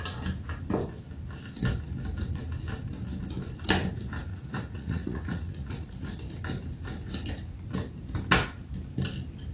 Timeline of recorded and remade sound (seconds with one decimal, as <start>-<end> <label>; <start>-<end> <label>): 0.0-4.3 recorded; 4.3-5.9 remade; 5.9-9.5 recorded